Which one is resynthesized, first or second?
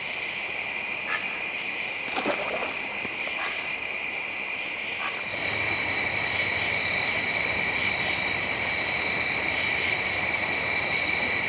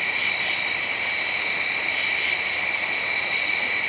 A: first